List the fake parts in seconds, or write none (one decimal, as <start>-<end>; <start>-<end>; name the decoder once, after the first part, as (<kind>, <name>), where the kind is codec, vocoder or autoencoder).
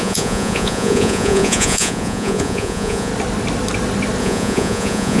0.0-3.1 (vocoder, Vocos); 4.2-5.2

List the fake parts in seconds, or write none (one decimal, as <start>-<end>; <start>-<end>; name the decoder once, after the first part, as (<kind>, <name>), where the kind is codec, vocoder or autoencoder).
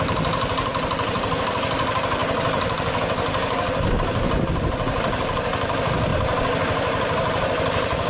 none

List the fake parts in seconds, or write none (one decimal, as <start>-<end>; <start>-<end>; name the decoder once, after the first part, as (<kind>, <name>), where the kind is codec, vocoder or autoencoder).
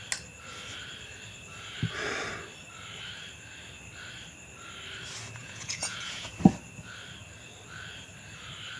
5.4-6.3 (vocoder, Vocos)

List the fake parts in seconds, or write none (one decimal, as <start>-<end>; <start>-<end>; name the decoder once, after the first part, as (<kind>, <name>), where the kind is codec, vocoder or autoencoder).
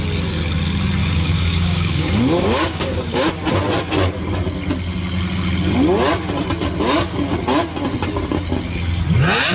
1.0-3.3 (codec, DAC)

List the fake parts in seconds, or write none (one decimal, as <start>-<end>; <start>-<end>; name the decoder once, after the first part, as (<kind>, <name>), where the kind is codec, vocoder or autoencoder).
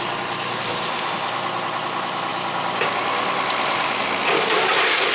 none